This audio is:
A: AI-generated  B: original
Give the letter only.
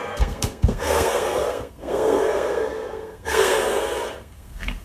A